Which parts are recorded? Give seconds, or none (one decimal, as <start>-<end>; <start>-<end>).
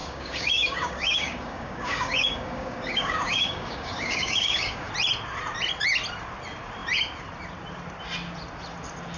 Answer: 4.9-9.2